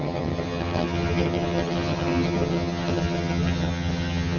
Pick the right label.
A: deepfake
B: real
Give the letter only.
A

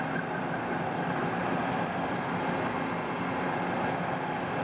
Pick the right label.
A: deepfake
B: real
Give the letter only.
B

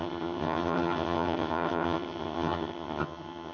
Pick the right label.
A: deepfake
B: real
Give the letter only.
A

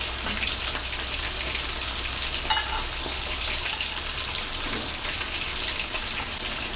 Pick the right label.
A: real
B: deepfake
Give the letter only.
A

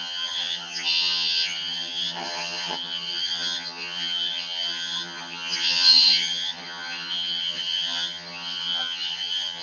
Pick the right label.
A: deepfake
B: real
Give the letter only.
A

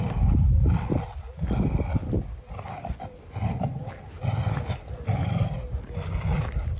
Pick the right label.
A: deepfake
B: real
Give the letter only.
B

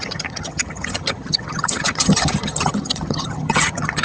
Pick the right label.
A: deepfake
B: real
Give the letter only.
A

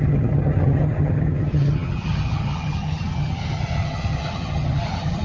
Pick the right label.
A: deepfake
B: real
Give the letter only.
A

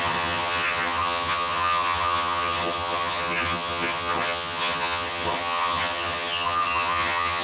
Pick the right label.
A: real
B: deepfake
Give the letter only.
B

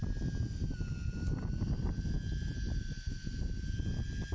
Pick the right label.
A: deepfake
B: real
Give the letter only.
B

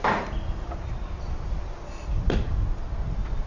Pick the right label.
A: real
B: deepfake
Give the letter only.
A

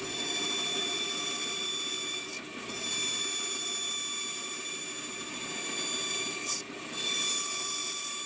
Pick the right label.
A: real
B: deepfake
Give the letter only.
A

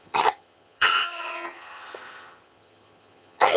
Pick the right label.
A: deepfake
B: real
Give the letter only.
A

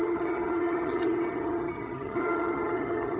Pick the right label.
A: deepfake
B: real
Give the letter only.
A